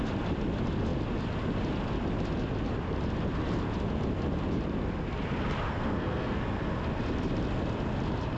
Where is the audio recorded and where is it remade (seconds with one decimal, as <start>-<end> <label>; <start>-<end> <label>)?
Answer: 0.0-5.7 recorded; 5.7-6.4 remade; 6.4-8.4 recorded